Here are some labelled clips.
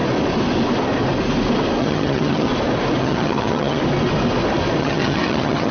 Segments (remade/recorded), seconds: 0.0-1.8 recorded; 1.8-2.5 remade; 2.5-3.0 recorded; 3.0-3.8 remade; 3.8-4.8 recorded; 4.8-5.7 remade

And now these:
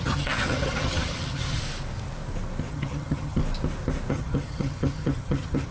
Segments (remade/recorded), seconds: 0.0-1.6 remade; 1.6-2.7 recorded; 2.7-3.4 remade; 3.4-4.1 recorded; 4.1-5.7 remade

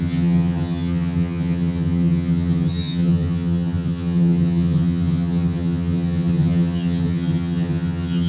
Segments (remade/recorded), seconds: 0.0-8.3 remade

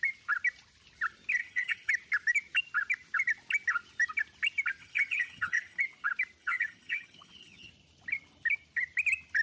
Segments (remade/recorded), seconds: 0.0-1.4 recorded; 1.4-1.9 remade; 1.9-4.8 recorded; 4.8-5.8 remade; 5.8-6.4 recorded; 6.4-7.7 remade; 7.7-9.4 recorded